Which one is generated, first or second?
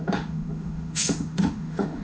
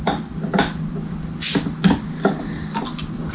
first